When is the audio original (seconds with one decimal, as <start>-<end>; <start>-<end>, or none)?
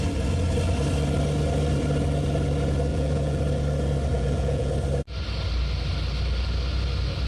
0.0-2.9; 3.4-4.1; 4.7-7.3